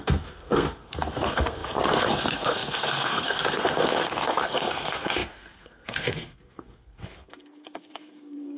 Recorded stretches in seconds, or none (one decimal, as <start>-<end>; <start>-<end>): none